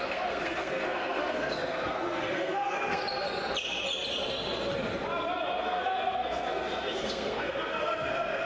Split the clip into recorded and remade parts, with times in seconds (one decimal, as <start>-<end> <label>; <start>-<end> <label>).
0.0-3.0 remade; 3.0-5.6 recorded; 5.6-8.5 remade